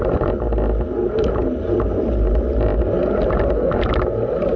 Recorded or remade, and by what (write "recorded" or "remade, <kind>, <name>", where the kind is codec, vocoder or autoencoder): recorded